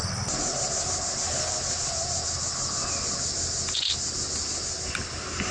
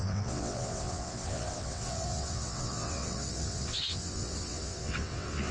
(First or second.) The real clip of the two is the first